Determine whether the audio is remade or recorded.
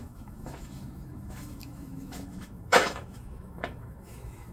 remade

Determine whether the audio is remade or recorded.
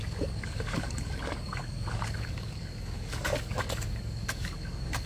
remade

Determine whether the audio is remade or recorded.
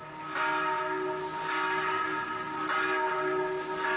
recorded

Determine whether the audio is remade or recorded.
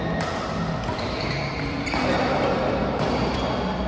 remade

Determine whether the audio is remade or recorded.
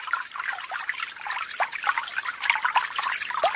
recorded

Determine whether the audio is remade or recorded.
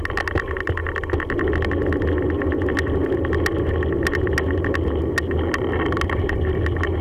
recorded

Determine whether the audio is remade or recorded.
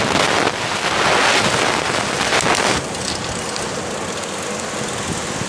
recorded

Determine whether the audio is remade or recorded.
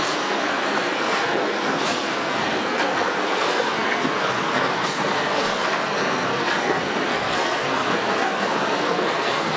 remade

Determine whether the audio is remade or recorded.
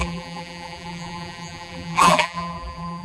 remade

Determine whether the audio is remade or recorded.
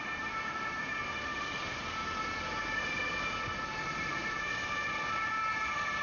remade